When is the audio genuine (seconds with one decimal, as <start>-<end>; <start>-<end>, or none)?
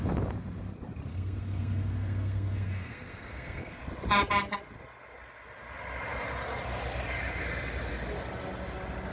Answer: 0.0-1.1; 3.8-9.1